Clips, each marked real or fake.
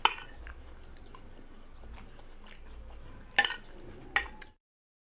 real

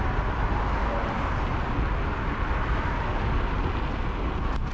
real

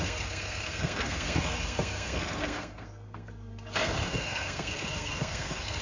fake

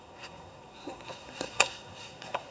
fake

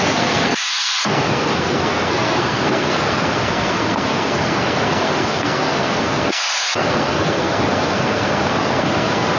fake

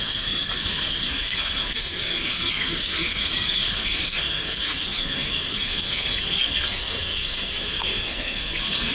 fake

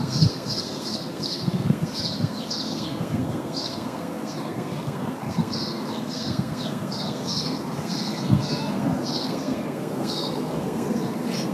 fake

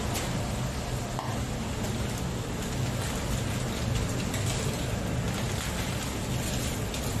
real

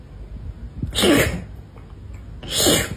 real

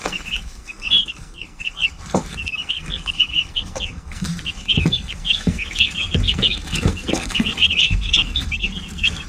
fake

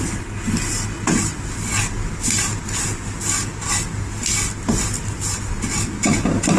real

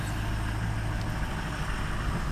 real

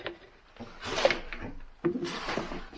real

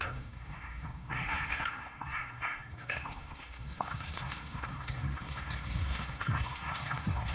fake